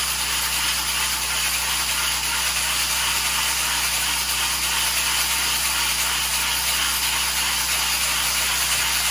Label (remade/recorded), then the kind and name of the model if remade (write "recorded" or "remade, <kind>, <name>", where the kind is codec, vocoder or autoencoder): recorded